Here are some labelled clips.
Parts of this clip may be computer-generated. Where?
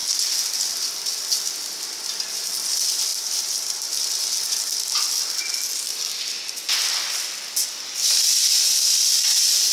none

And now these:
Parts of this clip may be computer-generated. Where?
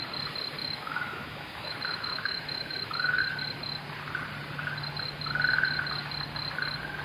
0.6-3.2 (autoencoder, DAC-VAE)